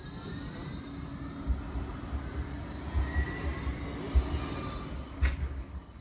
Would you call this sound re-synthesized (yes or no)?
no